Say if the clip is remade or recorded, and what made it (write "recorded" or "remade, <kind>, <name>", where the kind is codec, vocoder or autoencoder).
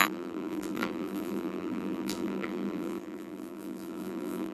remade, vocoder, BigVGAN v2